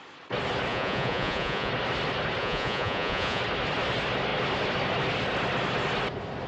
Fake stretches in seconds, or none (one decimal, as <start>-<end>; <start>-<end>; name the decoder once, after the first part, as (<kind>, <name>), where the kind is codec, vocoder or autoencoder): 0.7-1.7 (vocoder, Vocos); 2.4-3.4